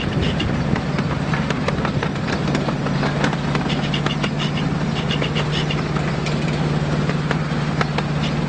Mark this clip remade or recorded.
recorded